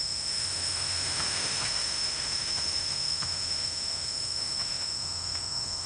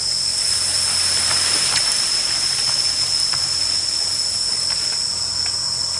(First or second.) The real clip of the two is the second